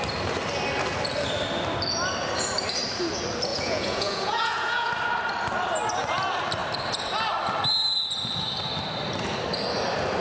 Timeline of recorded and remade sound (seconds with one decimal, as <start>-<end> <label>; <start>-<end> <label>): 0.0-3.5 recorded; 3.5-4.9 remade; 4.9-10.2 recorded